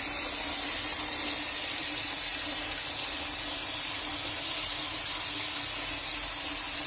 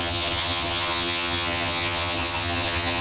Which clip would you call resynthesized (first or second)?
second